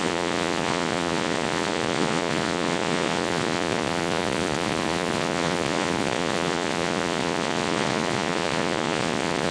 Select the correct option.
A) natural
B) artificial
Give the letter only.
B